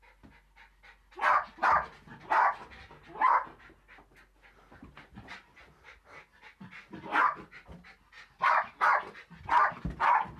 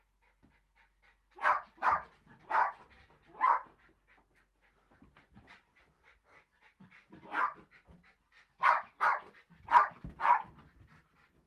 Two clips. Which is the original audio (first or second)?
first